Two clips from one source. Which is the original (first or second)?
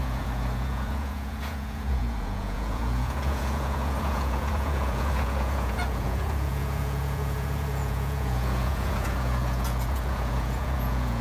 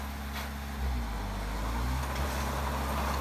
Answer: second